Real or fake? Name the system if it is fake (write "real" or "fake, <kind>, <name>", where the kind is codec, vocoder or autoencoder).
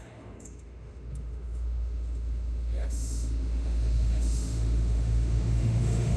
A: fake, autoencoder, DAC-VAE